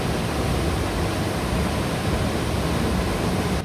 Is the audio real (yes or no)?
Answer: yes